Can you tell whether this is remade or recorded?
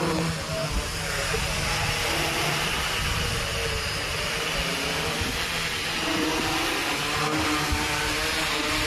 recorded